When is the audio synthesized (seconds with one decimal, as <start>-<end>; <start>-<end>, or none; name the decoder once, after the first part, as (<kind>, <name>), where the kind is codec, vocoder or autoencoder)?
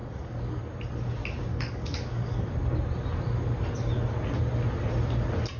0.0-0.6 (codec, DAC); 1.5-2.5